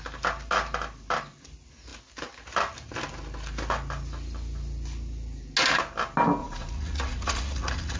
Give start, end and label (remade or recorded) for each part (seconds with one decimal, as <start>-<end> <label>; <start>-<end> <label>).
0.0-6.4 recorded; 6.4-8.0 remade